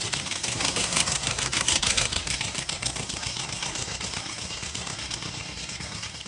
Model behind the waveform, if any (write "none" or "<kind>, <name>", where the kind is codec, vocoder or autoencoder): codec, SNAC